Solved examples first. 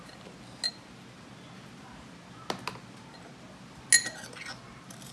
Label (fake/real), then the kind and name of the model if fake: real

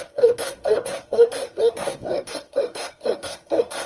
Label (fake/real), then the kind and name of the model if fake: fake, codec, SNAC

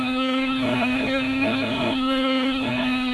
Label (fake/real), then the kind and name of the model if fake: fake, codec, SNAC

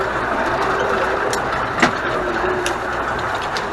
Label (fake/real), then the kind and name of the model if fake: real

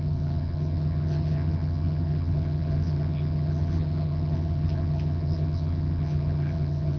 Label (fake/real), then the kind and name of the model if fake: fake, vocoder, HiFi-GAN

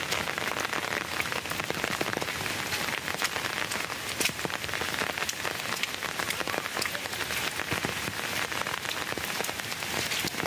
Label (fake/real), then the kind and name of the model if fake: real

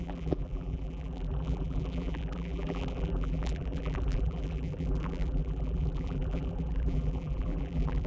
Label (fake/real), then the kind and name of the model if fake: fake, vocoder, BigVGAN v2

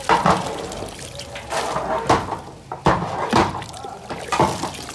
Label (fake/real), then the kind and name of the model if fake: real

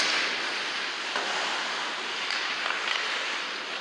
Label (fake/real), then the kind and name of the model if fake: real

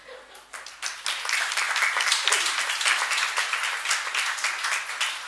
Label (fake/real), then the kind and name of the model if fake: real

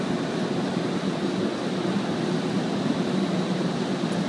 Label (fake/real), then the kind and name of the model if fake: real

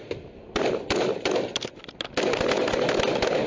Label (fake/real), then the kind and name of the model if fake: real